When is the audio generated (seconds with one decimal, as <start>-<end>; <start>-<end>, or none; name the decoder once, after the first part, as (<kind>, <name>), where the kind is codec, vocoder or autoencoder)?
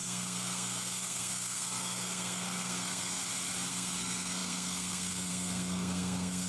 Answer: 0.0-3.2 (codec, SNAC); 3.7-6.5